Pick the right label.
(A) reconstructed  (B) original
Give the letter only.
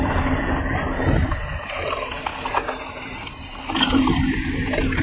B